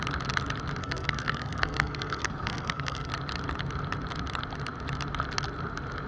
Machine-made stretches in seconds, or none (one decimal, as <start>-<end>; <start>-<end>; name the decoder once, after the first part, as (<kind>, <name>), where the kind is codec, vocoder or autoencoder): 0.8-3.1 (codec, SNAC)